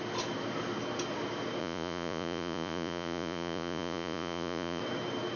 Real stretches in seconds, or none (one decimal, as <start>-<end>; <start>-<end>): 0.0-1.6; 4.8-5.4